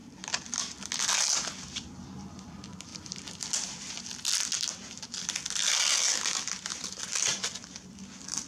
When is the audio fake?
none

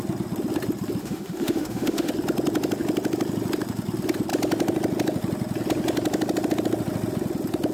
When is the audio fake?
1.0-2.1 (autoencoder, DAC-VAE)

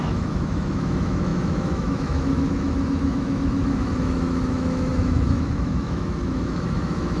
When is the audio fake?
0.0-7.2 (autoencoder, DAC-VAE)

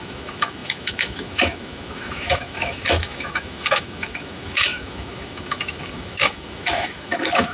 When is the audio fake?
0.0-7.5 (autoencoder, DAC-VAE)

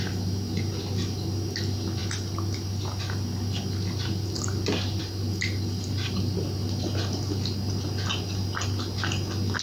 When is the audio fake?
none

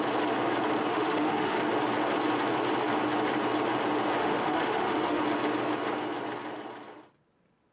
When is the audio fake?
0.9-1.6 (autoencoder, DAC-VAE); 4.2-5.2